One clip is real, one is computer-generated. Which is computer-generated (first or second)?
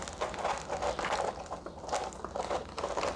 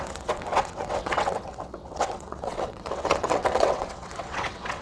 second